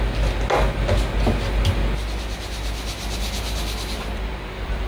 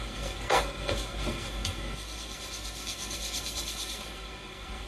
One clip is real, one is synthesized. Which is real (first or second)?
first